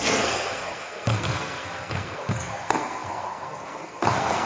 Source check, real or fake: fake